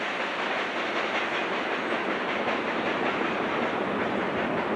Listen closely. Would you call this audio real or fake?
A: real